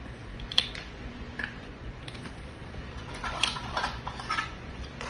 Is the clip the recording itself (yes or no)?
no